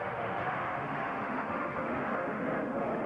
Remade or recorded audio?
remade